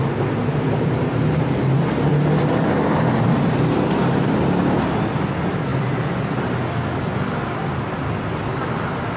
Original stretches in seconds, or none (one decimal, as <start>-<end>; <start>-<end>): 0.0-9.2